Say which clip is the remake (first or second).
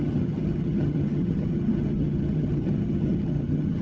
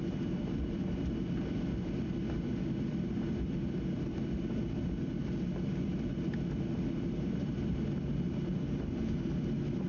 first